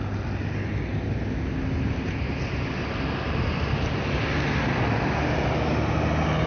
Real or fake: real